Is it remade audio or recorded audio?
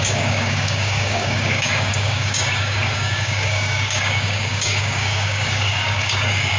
remade